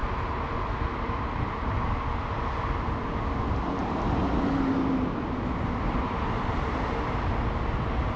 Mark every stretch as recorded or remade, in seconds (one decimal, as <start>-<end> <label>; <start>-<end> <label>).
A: 0.0-8.2 recorded